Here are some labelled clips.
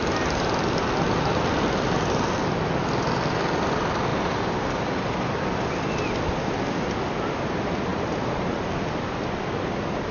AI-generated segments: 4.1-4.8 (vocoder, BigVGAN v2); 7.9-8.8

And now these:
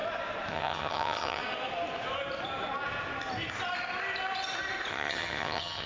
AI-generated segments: 0.5-1.4 (vocoder, HiFi-GAN); 4.9-5.9

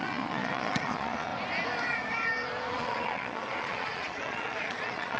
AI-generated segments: 0.0-1.3 (vocoder, Vocos); 2.7-5.2

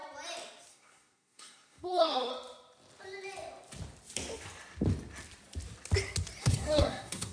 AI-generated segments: 0.7-2.3 (codec, SNAC); 6.4-7.3

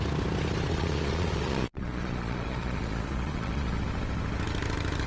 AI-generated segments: 0.7-3.8 (vocoder, Vocos)

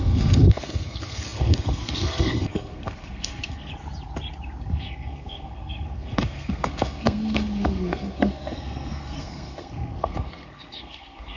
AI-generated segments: 0.0-3.7 (codec, SNAC); 4.6-11.4

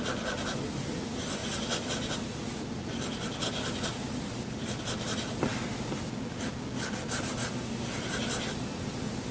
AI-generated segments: none

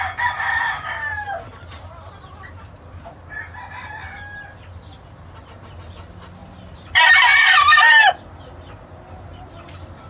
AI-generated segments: none